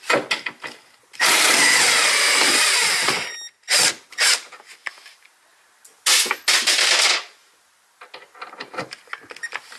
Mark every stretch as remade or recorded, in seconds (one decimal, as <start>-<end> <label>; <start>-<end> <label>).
0.0-1.0 recorded; 1.0-1.5 remade; 1.5-9.8 recorded

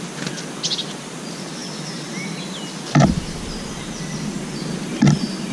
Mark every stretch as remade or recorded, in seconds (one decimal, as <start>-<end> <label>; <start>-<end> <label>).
0.0-5.5 recorded

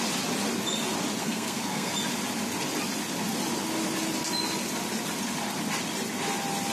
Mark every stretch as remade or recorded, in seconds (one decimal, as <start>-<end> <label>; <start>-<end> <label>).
0.0-1.2 recorded; 1.2-1.9 remade; 1.9-6.7 recorded

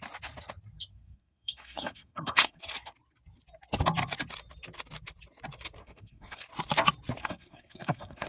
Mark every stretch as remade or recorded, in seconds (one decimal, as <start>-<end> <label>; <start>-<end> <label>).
0.0-0.9 recorded; 0.9-2.6 remade; 2.6-5.8 recorded; 5.8-6.4 remade; 6.4-7.2 recorded; 7.2-8.3 remade

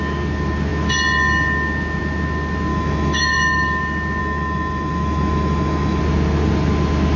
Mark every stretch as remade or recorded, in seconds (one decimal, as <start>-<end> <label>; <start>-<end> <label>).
0.0-2.7 recorded; 2.7-3.8 remade; 3.8-4.2 recorded; 4.2-6.0 remade; 6.0-7.2 recorded

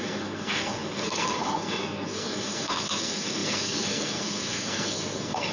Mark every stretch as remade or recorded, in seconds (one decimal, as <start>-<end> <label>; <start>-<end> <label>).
0.0-5.5 remade

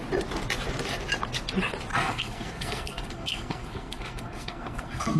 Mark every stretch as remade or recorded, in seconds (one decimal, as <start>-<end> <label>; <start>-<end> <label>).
0.0-1.9 recorded; 1.9-5.2 remade

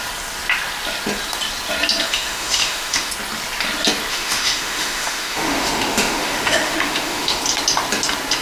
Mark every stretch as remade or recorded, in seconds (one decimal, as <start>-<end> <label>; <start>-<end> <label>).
0.0-2.0 recorded; 2.0-3.1 remade; 3.1-4.1 recorded; 4.1-7.4 remade; 7.4-8.4 recorded